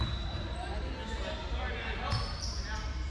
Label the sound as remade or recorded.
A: recorded